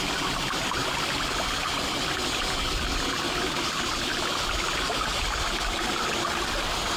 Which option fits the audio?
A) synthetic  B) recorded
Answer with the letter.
B